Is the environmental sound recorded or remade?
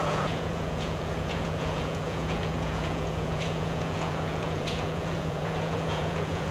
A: remade